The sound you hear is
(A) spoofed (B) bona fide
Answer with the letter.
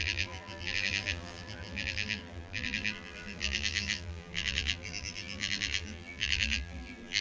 A